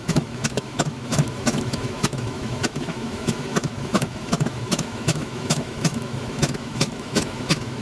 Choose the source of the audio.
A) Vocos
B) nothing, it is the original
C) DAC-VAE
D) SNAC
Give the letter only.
C